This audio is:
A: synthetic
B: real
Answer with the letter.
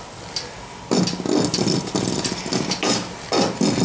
B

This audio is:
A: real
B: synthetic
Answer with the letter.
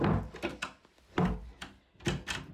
A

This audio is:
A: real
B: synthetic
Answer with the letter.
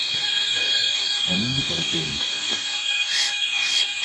B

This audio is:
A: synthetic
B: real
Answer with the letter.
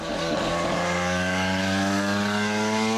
A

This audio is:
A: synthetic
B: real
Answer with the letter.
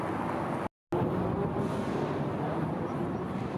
B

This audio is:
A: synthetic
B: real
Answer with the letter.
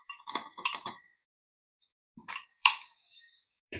A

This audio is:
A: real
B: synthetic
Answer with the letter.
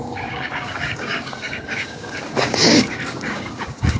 B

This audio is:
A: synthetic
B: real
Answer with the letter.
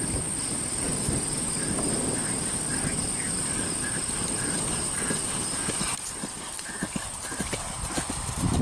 B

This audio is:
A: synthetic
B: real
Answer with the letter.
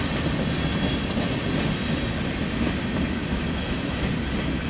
B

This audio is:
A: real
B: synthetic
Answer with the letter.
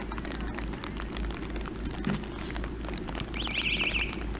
A